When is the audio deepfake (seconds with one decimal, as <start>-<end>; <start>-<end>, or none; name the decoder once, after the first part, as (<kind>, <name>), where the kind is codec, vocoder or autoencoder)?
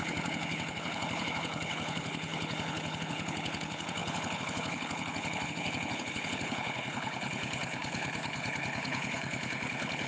0.0-10.1 (codec, HILCodec)